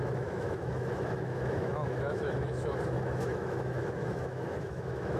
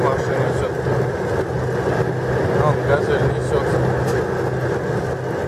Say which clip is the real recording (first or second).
second